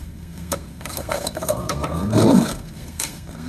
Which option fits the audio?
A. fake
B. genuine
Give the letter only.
A